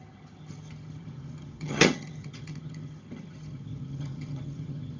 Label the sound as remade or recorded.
remade